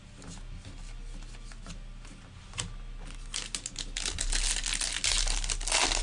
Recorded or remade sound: recorded